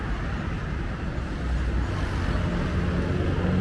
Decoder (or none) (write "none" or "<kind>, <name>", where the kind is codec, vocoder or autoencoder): none